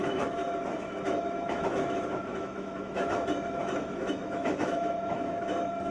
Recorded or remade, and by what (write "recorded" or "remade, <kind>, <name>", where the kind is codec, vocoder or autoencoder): remade, autoencoder, DAC-VAE